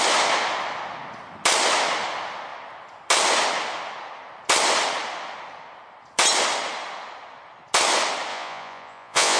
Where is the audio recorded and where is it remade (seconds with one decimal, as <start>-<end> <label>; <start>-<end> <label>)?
0.0-8.3 recorded; 8.3-9.4 remade